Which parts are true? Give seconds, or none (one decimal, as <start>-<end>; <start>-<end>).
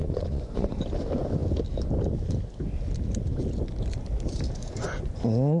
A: 0.8-4.6